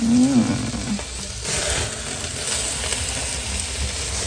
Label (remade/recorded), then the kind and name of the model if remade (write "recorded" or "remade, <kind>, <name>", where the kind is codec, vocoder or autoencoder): recorded